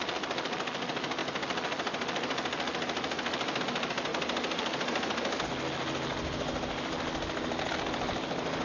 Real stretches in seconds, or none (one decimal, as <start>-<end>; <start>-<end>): 0.0-8.6